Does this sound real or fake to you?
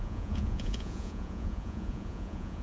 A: fake